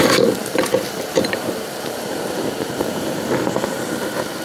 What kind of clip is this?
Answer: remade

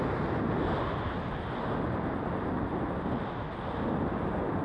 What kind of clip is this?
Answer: recorded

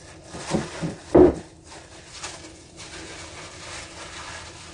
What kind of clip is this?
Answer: recorded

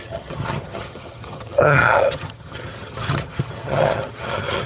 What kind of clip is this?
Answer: remade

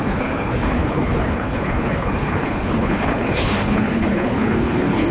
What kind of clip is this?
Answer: remade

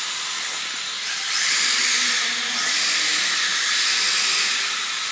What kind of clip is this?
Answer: recorded